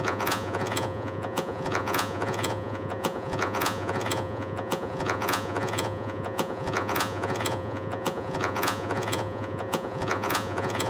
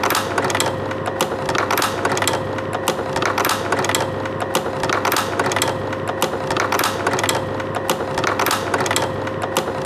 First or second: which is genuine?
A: second